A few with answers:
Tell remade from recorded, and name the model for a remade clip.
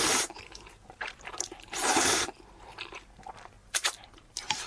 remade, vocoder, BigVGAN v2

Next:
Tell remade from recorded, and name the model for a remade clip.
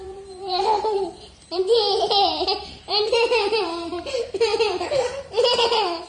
remade, vocoder, BigVGAN v2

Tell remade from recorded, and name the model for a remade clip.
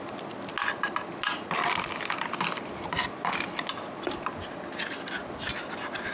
recorded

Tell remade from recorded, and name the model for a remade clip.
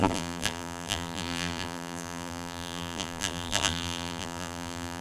remade, vocoder, BigVGAN v2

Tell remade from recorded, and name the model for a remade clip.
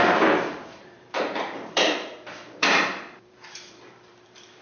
remade, vocoder, BigVGAN v2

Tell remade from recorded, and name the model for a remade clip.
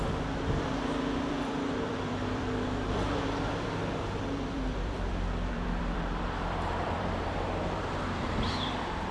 remade, vocoder, BigVGAN v2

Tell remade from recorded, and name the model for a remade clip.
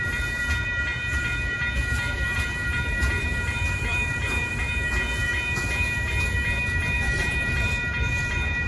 remade, vocoder, BigVGAN v2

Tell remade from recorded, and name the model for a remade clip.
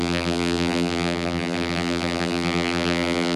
remade, vocoder, BigVGAN v2